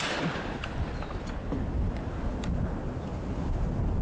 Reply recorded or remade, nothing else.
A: recorded